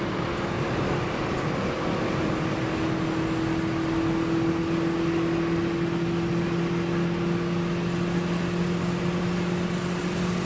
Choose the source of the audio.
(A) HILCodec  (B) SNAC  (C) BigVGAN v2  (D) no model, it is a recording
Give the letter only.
D